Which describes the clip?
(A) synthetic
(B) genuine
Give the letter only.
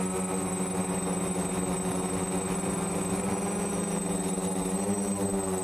B